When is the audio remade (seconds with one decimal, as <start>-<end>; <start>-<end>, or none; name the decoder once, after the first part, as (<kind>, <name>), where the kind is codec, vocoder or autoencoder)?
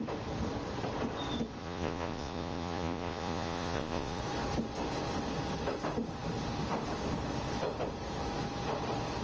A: 1.6-4.2 (vocoder, Vocos)